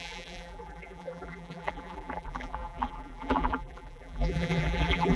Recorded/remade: remade